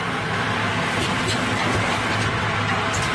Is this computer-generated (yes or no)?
no